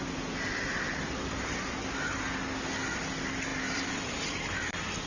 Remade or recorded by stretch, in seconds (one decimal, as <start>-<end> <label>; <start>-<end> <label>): 0.0-3.5 recorded; 3.5-4.6 remade; 4.6-5.1 recorded